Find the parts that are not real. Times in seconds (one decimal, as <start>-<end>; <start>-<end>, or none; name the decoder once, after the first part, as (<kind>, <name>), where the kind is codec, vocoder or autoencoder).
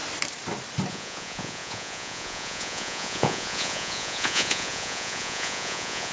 0.9-6.1 (vocoder, Vocos)